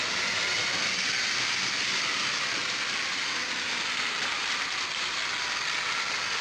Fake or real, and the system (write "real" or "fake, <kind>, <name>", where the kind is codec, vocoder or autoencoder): real